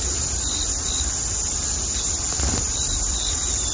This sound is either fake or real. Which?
real